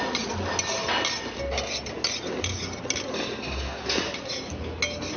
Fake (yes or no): no